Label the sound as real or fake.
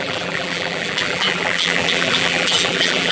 fake